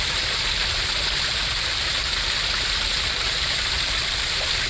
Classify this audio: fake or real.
real